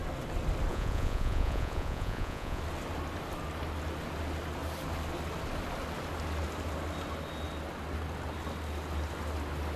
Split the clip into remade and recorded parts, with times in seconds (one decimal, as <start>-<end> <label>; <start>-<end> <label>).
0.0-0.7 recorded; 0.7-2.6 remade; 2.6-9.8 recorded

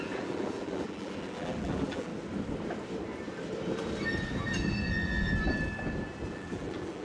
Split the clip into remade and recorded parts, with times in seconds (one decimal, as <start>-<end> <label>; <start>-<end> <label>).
0.0-2.1 remade; 2.1-6.3 recorded; 6.3-7.0 remade

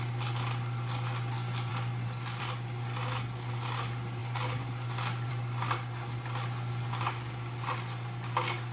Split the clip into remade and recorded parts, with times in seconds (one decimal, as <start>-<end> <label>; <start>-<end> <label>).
0.0-8.7 recorded